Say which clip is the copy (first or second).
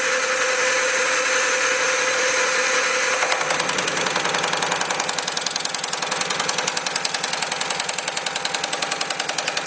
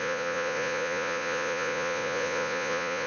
second